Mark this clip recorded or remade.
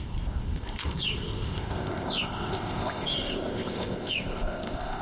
remade